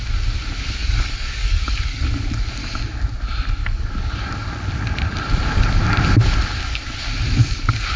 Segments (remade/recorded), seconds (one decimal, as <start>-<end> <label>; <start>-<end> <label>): 0.0-0.8 recorded; 0.8-2.0 remade; 2.0-3.6 recorded; 3.6-4.2 remade; 4.2-8.0 recorded